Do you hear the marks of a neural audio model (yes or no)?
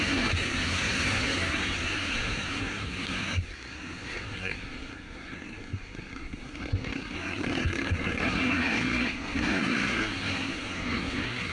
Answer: yes